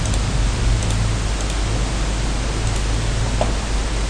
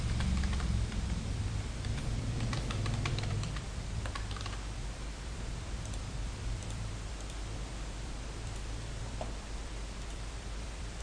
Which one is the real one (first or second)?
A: first